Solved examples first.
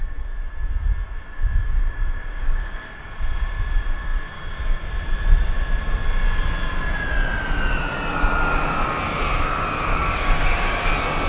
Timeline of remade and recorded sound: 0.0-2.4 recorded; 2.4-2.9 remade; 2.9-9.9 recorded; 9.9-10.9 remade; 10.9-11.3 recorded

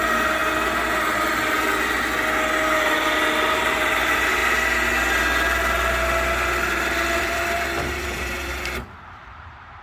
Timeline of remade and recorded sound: 0.0-0.4 remade; 0.4-3.5 recorded; 3.5-4.4 remade; 4.4-7.2 recorded; 7.2-9.8 remade

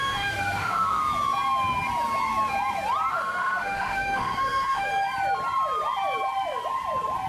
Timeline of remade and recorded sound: 0.0-1.0 remade; 1.0-3.1 recorded; 3.1-4.9 remade; 4.9-7.3 recorded

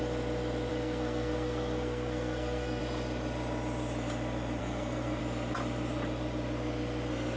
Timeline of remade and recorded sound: 0.0-0.7 recorded; 0.7-2.8 remade; 2.8-4.6 recorded; 4.6-5.2 remade; 5.2-7.4 recorded